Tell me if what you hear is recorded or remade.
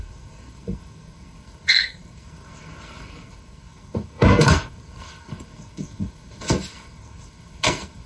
remade